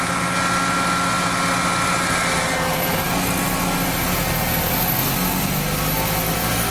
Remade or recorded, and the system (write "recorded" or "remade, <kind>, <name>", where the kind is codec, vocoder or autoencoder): recorded